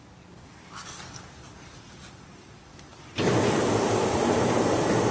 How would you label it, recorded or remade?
recorded